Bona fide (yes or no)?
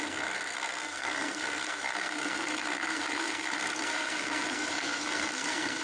no